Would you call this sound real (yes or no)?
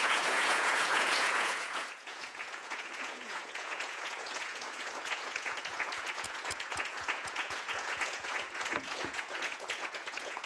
no